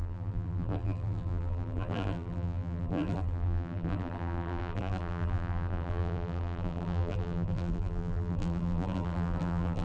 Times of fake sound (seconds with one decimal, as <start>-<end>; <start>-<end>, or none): 0.0-9.8